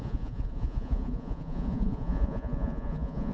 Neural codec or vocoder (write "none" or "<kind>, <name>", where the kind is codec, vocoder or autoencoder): vocoder, Vocos